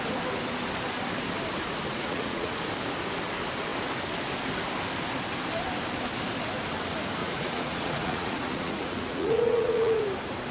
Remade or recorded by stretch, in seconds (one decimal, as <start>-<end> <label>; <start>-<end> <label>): 0.0-1.9 recorded; 1.9-2.6 remade; 2.6-7.2 recorded; 7.2-10.0 remade; 10.0-10.5 recorded